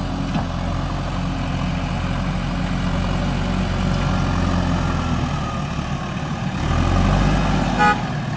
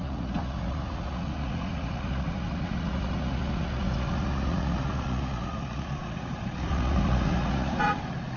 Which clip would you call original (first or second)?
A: first